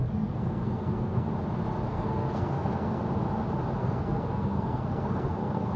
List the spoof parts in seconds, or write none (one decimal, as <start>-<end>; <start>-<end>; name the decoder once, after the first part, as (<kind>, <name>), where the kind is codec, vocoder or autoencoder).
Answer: 0.0-1.3 (codec, SNAC); 1.9-3.0; 3.8-5.8